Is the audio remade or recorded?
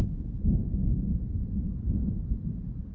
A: remade